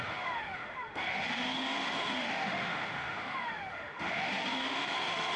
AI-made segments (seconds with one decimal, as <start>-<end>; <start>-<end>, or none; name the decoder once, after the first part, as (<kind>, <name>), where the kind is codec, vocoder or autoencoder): 0.0-5.4 (autoencoder, DAC-VAE)